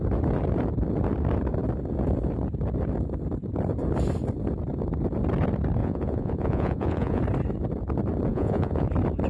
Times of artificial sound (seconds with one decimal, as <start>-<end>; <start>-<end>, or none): 5.8-7.2; 8.3-8.9